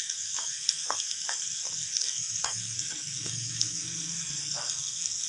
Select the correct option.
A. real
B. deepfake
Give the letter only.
B